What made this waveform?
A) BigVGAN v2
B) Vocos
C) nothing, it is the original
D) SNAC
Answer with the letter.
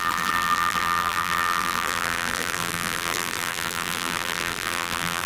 A